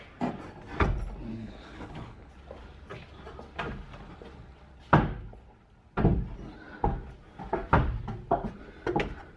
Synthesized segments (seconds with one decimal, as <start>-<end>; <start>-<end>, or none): 1.3-2.3